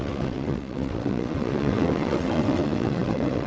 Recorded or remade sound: remade